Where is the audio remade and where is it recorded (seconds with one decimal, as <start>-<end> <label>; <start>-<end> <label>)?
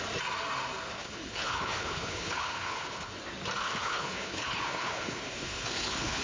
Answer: 0.0-0.9 recorded; 0.9-3.2 remade; 3.2-3.6 recorded; 3.6-6.2 remade